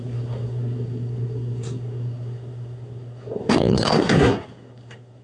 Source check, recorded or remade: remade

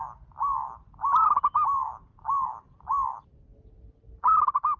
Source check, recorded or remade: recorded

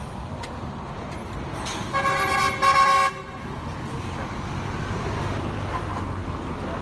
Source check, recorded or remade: recorded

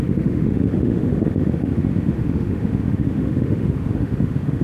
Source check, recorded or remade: remade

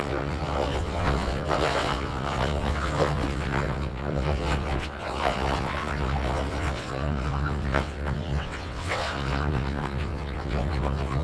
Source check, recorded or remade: remade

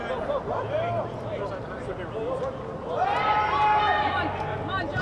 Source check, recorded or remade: recorded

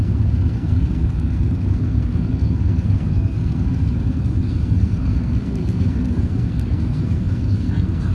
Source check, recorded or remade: remade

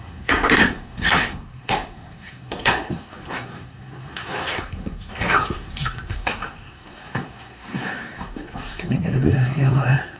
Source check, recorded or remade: remade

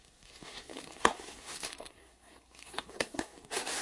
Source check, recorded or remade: remade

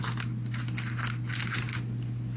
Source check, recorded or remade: recorded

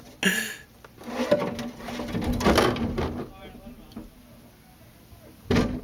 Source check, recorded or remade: recorded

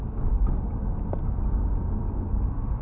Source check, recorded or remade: recorded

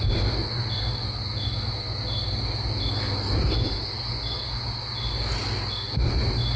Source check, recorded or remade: recorded